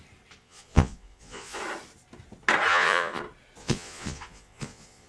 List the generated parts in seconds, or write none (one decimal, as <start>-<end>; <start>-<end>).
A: 0.4-1.6; 2.7-3.2; 3.6-5.1